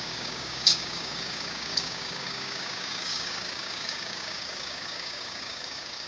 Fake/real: fake